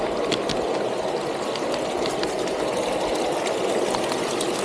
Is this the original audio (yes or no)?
yes